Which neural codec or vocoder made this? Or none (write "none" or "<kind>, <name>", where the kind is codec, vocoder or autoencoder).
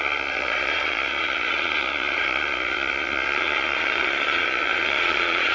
vocoder, Vocos